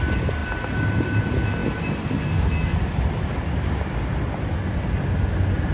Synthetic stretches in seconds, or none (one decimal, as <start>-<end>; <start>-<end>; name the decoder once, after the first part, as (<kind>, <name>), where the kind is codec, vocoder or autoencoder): none